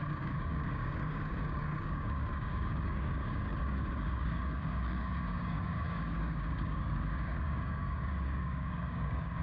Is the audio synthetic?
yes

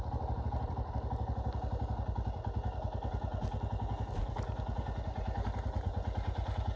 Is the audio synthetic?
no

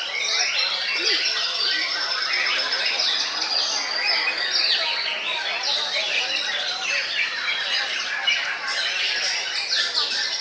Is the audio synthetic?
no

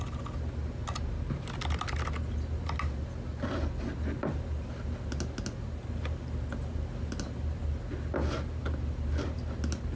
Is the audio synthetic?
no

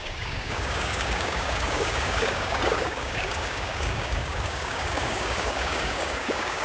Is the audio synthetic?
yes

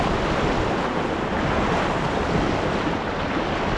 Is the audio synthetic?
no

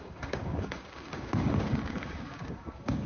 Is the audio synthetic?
yes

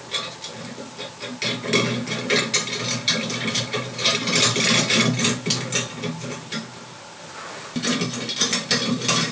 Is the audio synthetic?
no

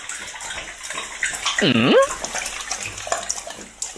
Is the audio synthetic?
no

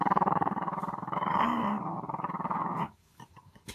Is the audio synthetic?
yes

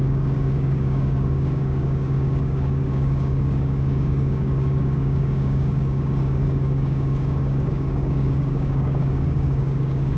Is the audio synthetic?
yes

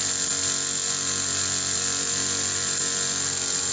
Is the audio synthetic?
no